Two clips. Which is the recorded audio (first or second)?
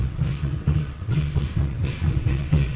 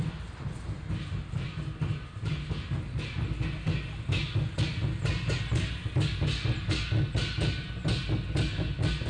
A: second